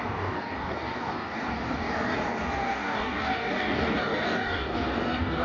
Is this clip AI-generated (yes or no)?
yes